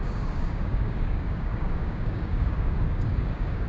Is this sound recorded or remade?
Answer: remade